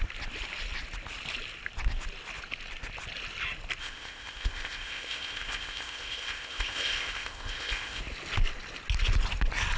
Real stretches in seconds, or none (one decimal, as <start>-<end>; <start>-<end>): 0.0-3.8; 8.0-9.8